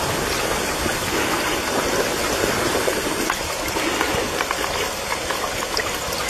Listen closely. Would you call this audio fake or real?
real